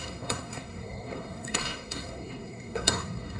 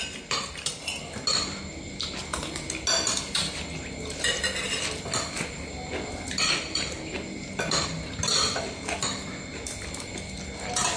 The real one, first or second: second